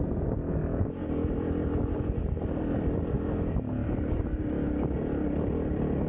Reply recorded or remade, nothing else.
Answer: recorded